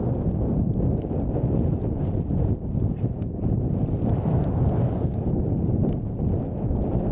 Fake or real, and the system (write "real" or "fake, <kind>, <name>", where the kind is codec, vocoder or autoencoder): real